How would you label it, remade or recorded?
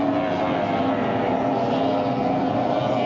recorded